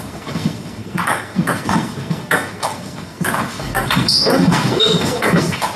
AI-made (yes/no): yes